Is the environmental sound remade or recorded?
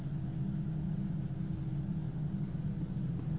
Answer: recorded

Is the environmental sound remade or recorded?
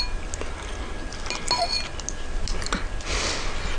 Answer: recorded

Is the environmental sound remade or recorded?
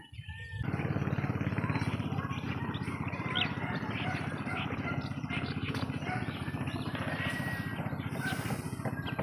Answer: recorded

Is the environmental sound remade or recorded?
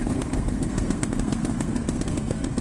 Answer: remade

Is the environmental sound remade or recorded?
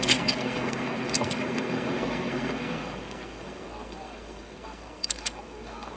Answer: remade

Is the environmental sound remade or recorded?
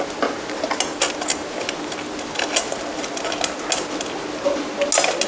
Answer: recorded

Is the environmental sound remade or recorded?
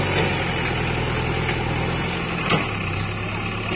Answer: recorded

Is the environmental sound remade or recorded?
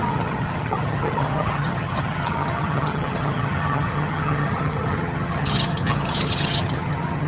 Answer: remade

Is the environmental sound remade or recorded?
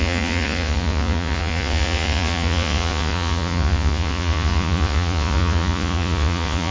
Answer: remade